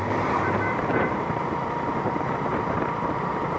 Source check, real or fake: fake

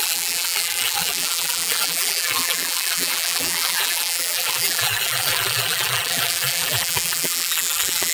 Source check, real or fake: fake